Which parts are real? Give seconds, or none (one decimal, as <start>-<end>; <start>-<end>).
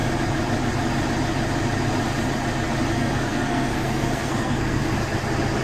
0.0-2.9; 4.8-5.6